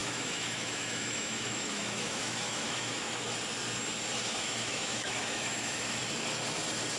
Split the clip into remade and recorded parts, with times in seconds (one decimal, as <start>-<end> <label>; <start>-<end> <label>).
0.0-3.3 remade; 3.3-4.2 recorded; 4.2-6.0 remade; 6.0-7.0 recorded

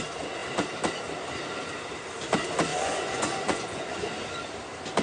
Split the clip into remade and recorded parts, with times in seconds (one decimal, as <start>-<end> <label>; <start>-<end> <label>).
0.0-2.7 recorded; 2.7-4.1 remade; 4.1-5.0 recorded